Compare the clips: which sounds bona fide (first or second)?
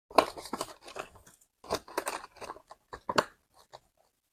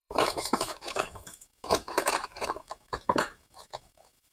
first